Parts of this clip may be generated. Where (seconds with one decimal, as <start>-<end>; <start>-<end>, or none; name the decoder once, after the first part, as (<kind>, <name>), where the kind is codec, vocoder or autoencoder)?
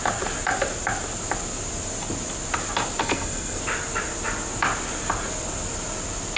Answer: 3.0-3.6 (codec, SNAC)